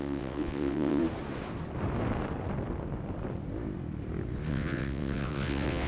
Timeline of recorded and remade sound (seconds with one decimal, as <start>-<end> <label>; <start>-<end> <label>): 0.0-1.0 remade; 1.0-4.5 recorded; 4.5-5.9 remade